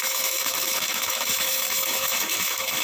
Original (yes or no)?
no